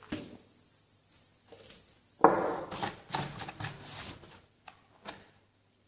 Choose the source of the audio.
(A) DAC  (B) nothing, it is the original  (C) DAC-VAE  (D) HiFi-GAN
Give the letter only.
B